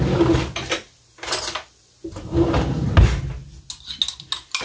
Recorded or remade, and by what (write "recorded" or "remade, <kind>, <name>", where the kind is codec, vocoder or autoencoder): recorded